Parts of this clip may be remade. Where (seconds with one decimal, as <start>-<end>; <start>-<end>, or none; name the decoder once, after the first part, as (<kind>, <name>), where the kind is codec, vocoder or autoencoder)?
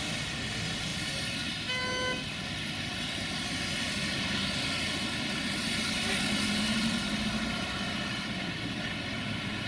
none